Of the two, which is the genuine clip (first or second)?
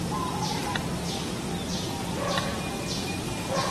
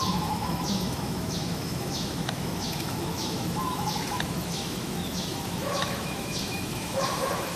first